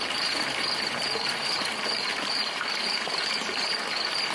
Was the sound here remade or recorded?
remade